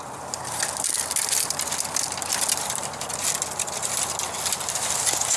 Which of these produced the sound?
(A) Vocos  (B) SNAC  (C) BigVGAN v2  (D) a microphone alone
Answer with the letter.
D